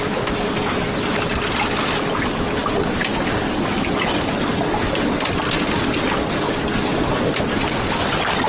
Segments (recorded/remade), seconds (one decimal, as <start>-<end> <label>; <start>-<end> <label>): 0.0-8.5 recorded